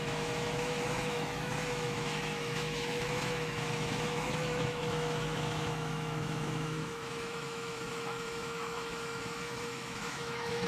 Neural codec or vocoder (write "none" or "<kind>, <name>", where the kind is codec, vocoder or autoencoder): autoencoder, DAC-VAE